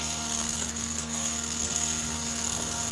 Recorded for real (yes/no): no